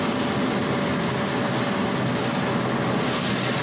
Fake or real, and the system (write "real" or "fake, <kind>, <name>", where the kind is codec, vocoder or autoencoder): real